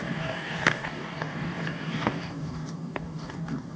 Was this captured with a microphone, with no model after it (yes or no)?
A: no